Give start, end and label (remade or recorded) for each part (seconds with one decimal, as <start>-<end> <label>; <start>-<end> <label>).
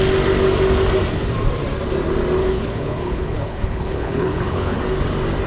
0.0-2.4 recorded; 2.4-4.8 remade; 4.8-5.5 recorded